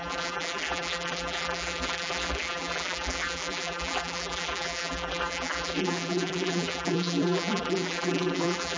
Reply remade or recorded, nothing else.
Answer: remade